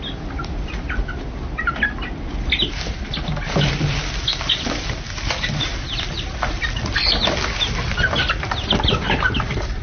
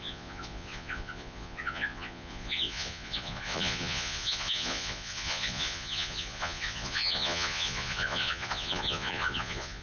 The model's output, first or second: second